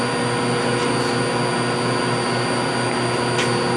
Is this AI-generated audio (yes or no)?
no